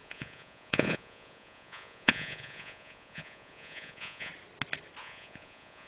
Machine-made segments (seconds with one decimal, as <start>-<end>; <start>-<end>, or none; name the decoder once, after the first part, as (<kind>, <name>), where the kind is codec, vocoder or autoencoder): 0.0-4.3 (vocoder, Vocos); 5.0-5.9